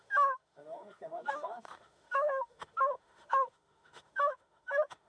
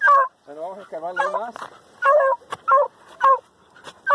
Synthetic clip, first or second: first